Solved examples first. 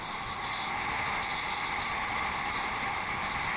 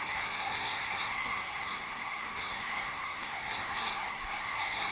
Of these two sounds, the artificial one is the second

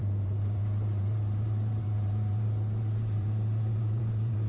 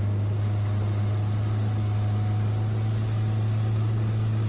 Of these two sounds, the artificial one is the first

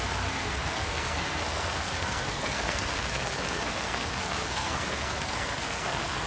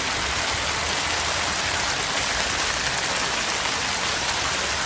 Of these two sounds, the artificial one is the first